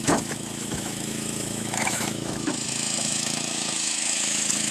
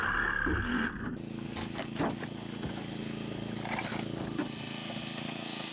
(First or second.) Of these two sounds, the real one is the second